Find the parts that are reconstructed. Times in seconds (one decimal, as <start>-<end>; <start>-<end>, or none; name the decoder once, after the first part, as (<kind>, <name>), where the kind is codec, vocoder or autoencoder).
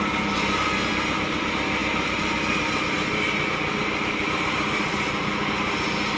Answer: none